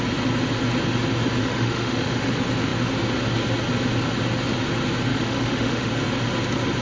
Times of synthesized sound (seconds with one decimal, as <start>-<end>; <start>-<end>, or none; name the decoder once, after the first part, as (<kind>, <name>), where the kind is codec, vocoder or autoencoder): 1.4-2.3 (autoencoder, DAC-VAE); 5.1-5.9